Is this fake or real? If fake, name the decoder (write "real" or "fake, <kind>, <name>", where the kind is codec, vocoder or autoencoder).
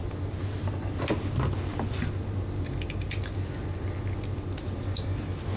real